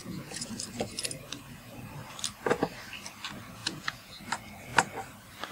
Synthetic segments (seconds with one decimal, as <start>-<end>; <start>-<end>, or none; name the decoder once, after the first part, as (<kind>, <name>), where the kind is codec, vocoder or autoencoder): 0.0-0.5 (vocoder, Vocos); 3.6-4.2